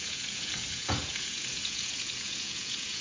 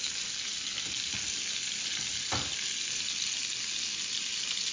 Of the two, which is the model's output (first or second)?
first